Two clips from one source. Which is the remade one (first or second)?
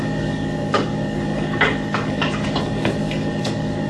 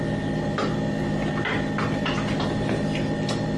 first